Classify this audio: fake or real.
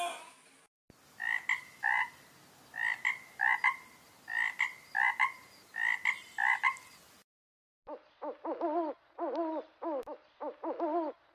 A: real